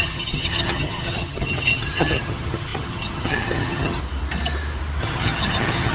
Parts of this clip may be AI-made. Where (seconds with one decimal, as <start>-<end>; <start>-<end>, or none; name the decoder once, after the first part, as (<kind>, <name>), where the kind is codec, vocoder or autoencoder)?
0.0-4.0 (vocoder, HiFi-GAN); 5.0-5.9

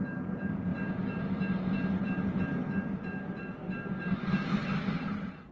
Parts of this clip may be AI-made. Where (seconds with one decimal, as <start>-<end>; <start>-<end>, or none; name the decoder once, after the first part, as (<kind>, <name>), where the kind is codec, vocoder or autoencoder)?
none

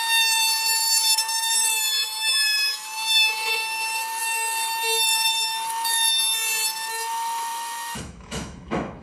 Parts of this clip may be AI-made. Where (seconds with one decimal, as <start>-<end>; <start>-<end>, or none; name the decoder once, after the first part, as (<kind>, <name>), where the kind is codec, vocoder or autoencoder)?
0.0-6.2 (autoencoder, DAC-VAE); 6.9-9.0

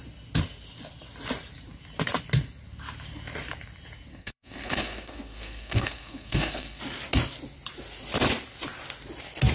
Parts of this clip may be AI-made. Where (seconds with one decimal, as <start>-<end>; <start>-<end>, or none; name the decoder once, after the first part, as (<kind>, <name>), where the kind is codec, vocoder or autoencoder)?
4.1-6.8 (codec, SNAC)

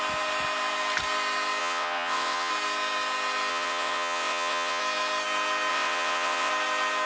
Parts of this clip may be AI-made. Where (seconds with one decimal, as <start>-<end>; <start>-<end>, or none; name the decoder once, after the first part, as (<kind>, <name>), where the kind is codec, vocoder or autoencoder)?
1.6-2.5 (vocoder, WaveNeXt); 3.5-4.8; 5.7-6.5